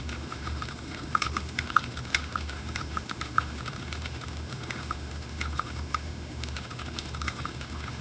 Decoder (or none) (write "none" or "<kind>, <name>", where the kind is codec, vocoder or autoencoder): autoencoder, DAC-VAE